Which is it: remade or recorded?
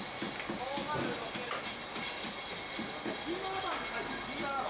recorded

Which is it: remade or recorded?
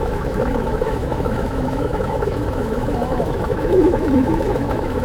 remade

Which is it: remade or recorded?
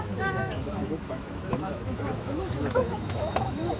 remade